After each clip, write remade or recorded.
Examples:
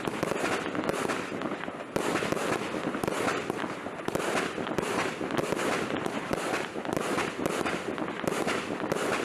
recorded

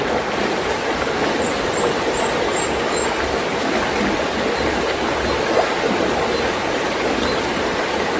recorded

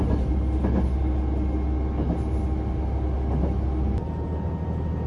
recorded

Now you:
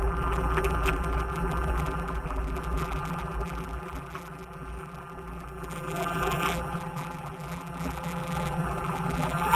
remade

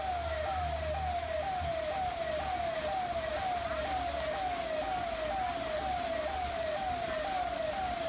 recorded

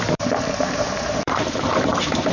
remade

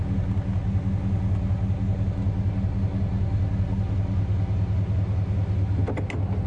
recorded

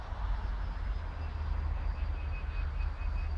recorded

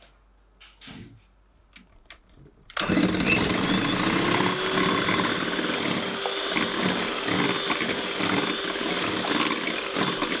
recorded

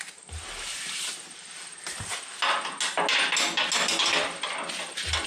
recorded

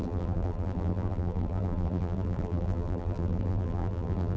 remade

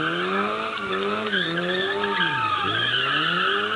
remade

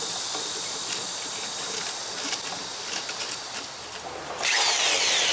remade